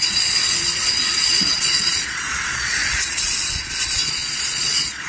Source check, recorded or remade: remade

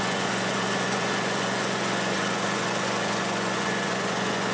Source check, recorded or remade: remade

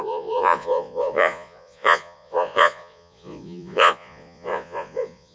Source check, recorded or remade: remade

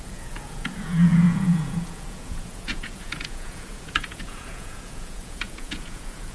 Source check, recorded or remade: remade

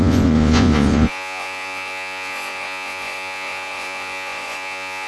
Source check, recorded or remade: remade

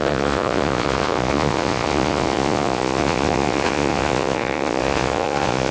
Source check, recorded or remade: remade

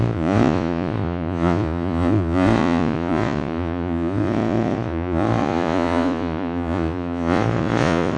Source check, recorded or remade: remade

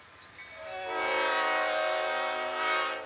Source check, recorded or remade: recorded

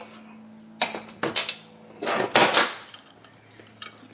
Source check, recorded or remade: recorded